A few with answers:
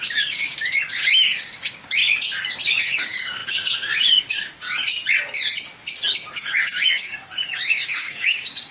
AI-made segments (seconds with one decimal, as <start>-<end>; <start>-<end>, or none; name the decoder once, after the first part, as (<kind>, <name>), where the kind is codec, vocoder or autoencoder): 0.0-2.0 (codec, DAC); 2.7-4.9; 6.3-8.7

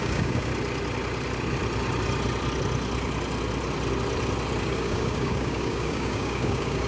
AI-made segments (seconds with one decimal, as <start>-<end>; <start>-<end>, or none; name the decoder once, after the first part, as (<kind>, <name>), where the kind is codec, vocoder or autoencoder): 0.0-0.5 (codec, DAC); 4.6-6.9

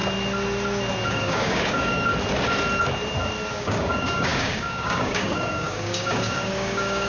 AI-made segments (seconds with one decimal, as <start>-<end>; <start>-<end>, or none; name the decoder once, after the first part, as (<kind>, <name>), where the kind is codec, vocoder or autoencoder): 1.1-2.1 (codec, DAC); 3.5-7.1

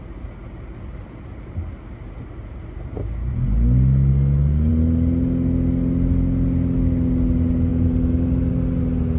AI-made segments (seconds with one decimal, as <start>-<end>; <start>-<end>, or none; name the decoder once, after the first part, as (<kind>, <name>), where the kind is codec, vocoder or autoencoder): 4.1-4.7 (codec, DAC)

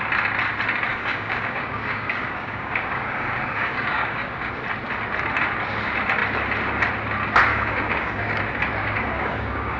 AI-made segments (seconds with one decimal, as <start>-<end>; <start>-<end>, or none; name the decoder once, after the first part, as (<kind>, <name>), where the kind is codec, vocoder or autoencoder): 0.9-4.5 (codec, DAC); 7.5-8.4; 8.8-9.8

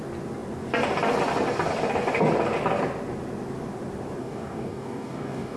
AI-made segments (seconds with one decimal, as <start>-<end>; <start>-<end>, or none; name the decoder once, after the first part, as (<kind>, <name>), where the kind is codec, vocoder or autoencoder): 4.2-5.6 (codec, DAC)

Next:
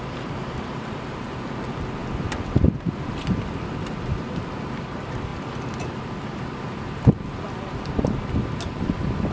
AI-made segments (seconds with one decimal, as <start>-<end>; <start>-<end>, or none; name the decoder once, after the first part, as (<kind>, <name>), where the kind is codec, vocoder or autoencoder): none